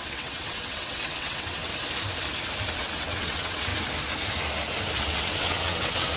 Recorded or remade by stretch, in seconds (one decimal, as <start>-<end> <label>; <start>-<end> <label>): 0.0-1.7 remade; 1.7-2.8 recorded; 2.8-3.7 remade; 3.7-5.0 recorded; 5.0-6.2 remade